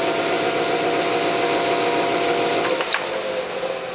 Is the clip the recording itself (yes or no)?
yes